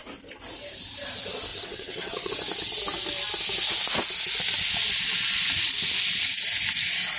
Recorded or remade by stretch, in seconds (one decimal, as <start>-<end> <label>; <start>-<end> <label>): 0.0-1.5 recorded; 1.5-2.3 remade; 2.3-7.2 recorded